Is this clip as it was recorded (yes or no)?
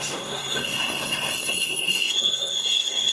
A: no